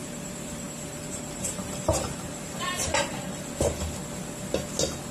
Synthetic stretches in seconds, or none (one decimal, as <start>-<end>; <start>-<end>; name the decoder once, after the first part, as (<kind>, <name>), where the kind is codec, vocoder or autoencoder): 0.0-3.1 (vocoder, BigVGAN v2)